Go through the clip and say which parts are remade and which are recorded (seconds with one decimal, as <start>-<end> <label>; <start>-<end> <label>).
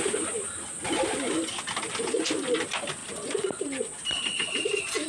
0.0-3.0 recorded; 3.0-3.6 remade; 3.6-5.1 recorded